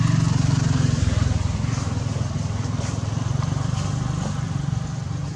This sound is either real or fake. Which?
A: real